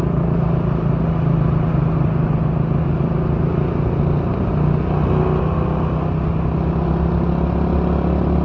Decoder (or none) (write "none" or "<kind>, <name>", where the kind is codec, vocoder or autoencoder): none